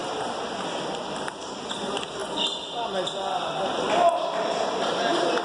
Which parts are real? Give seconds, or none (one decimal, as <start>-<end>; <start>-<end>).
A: 1.0-5.4